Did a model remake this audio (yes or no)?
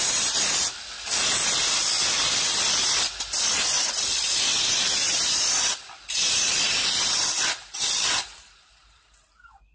no